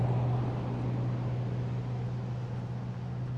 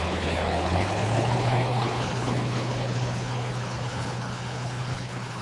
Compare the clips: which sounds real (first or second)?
first